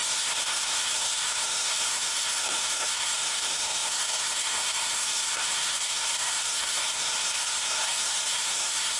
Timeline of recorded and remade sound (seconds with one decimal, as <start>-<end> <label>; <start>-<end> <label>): 0.0-9.0 remade